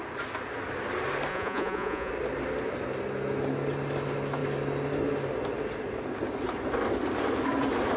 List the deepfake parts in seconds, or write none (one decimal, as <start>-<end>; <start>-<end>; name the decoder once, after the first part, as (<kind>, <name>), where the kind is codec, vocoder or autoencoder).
1.3-2.1 (vocoder, Vocos)